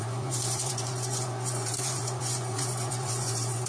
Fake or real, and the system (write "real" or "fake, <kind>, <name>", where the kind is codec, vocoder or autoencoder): fake, vocoder, Vocos